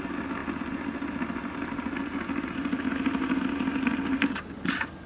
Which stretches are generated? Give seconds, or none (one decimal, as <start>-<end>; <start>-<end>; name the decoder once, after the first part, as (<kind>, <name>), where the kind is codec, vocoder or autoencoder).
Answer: none